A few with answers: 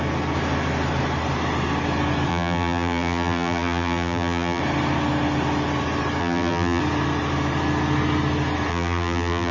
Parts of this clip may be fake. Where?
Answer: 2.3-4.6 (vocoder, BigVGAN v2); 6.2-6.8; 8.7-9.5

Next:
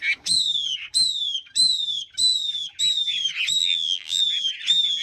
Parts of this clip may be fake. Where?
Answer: 3.6-4.2 (vocoder, BigVGAN v2)

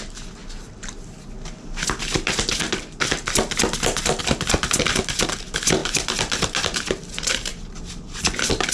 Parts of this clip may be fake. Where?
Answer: none